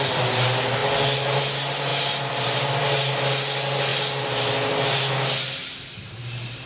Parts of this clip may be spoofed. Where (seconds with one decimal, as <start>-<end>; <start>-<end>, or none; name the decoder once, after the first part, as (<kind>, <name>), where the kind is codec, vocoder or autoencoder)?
none